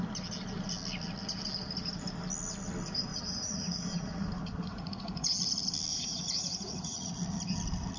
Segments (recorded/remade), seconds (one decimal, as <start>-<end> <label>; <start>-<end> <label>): 0.0-3.1 recorded; 3.1-4.3 remade; 4.3-4.7 recorded; 4.7-5.3 remade; 5.3-5.9 recorded; 5.9-7.1 remade; 7.1-8.0 recorded